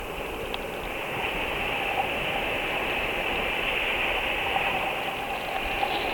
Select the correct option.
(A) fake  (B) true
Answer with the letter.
B